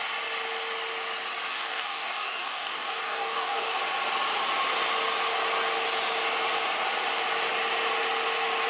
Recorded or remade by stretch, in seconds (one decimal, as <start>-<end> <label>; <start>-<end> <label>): 0.0-1.5 recorded; 1.5-3.8 remade; 3.8-8.7 recorded